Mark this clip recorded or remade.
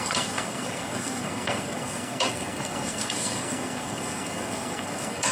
remade